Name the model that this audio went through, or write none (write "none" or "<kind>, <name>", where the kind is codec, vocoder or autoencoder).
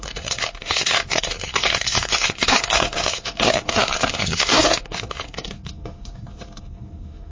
codec, SNAC